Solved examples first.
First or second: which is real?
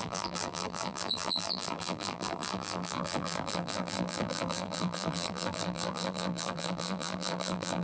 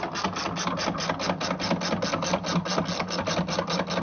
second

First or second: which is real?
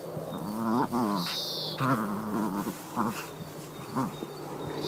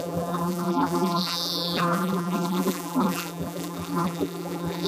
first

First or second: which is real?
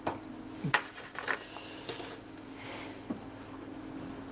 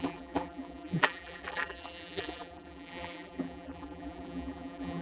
first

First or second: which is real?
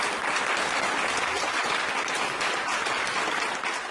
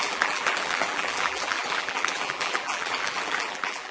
first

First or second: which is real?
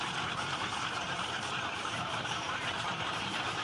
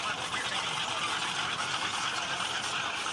second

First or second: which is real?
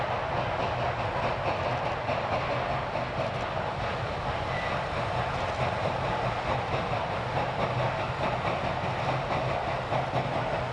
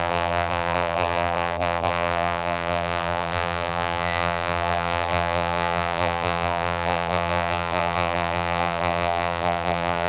first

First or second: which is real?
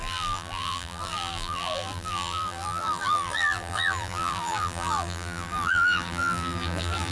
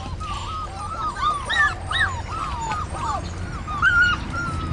second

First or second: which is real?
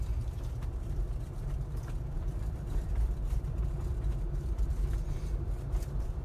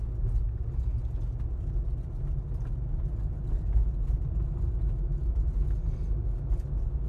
second